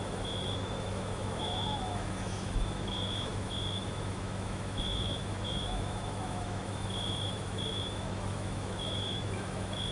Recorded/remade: remade